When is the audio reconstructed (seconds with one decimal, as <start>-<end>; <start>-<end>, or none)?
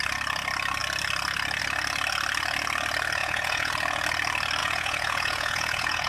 3.2-3.7; 4.6-6.1